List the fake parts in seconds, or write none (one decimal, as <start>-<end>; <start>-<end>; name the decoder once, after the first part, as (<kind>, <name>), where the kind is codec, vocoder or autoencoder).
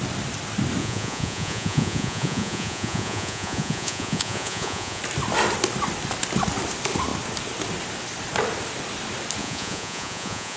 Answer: 0.8-5.0 (vocoder, Vocos); 9.4-10.6